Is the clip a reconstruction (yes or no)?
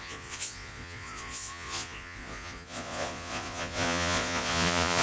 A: yes